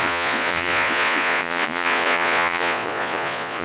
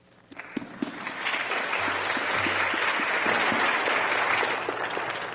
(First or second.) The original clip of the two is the second